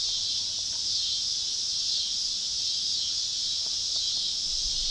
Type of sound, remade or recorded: recorded